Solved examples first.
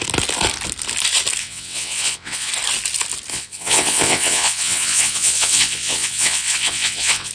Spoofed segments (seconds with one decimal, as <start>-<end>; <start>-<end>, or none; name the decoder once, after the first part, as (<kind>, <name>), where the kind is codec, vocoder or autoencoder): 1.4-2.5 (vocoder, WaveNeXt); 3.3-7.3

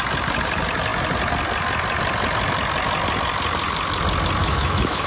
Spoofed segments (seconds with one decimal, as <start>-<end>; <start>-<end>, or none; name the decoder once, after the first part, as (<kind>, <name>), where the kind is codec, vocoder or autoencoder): 4.4-5.1 (autoencoder, DAC-VAE)

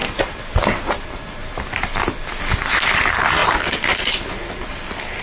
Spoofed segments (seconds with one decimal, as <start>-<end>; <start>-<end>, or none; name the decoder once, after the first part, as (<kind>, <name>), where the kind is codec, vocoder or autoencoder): none

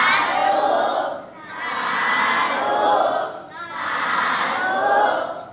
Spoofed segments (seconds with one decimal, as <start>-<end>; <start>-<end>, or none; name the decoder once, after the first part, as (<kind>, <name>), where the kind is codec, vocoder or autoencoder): none

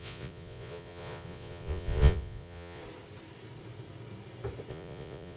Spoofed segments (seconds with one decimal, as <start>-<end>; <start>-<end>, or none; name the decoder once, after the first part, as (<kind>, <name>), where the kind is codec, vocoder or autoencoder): 0.0-2.8 (vocoder, Vocos); 4.7-5.4

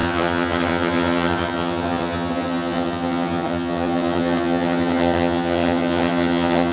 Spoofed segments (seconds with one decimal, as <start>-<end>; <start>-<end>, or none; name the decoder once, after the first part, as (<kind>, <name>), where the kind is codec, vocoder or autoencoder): 0.0-6.7 (vocoder, HiFi-GAN)

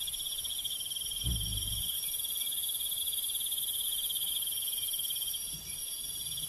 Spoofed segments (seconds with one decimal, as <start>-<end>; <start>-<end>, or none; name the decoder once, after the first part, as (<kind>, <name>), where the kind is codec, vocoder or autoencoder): 0.0-6.5 (vocoder, BigVGAN v2)